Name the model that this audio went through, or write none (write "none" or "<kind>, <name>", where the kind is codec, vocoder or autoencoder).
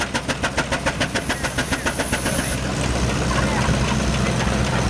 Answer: none